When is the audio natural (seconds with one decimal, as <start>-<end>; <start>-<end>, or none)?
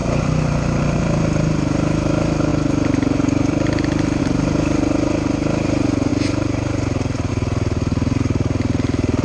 0.8-2.5; 4.2-6.1; 7.3-9.2